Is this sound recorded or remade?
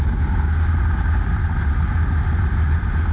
recorded